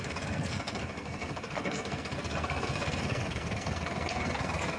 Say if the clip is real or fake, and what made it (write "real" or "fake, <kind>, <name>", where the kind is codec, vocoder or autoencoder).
fake, codec, SNAC